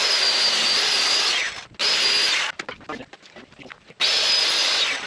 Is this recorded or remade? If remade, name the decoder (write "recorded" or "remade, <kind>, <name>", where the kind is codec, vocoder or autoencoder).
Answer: recorded